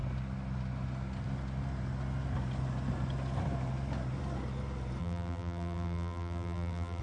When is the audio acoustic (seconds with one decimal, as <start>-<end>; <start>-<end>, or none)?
0.0-5.0